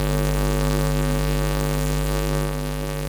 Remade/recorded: remade